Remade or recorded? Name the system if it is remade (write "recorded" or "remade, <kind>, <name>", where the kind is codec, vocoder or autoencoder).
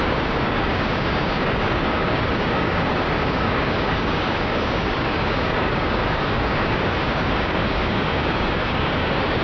remade, codec, DAC